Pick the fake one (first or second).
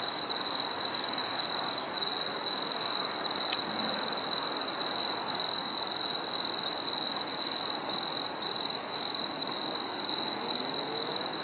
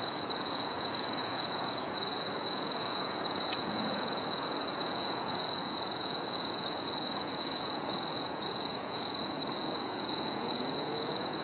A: second